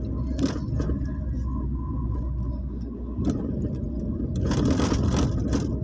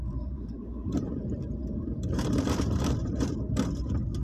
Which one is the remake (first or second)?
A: second